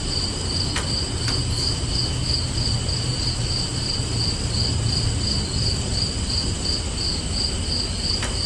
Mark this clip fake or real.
real